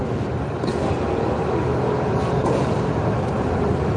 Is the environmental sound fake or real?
real